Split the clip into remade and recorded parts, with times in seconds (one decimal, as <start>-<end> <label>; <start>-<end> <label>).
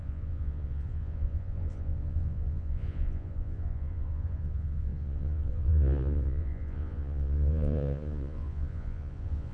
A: 0.0-9.5 remade